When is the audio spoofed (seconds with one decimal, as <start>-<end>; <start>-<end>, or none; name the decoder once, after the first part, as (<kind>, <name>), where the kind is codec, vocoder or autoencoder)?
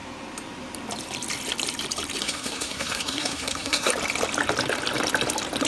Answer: 2.2-3.9 (codec, SNAC)